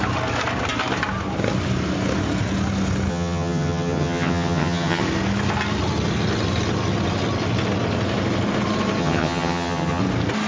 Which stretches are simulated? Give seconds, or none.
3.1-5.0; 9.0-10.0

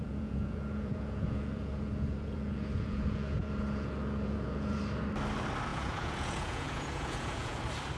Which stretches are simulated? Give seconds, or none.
0.0-4.8; 5.7-7.6